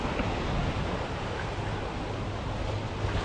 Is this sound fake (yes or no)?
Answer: no